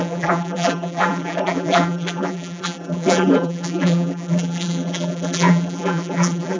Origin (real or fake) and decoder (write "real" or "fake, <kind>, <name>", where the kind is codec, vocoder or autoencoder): fake, vocoder, BigVGAN v2